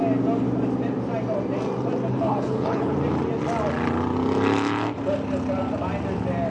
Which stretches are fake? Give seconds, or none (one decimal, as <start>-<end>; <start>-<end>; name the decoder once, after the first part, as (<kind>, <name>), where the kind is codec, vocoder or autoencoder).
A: 2.1-2.9 (codec, HILCodec)